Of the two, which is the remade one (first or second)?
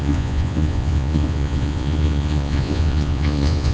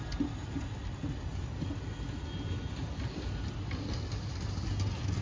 first